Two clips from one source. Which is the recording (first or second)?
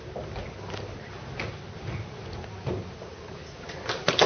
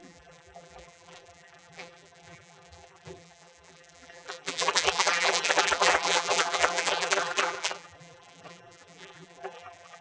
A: first